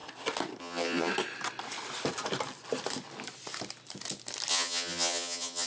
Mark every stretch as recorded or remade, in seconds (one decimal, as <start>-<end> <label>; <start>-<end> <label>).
0.0-0.6 recorded; 0.6-1.1 remade; 1.1-4.5 recorded; 4.5-5.7 remade